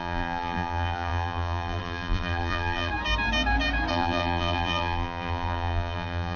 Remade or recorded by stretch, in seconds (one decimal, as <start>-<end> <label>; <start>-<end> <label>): 0.0-2.9 remade; 2.9-3.9 recorded; 3.9-6.4 remade